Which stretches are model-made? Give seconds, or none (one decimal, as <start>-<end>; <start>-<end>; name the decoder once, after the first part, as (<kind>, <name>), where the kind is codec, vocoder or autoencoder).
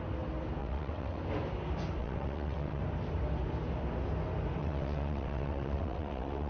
0.6-1.2 (vocoder, WaveNeXt); 2.0-2.8; 4.6-6.5